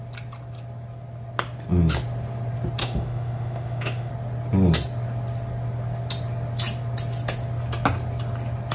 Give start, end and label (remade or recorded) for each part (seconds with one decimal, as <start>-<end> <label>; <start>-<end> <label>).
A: 0.0-2.8 recorded; 2.8-4.1 remade; 4.1-8.7 recorded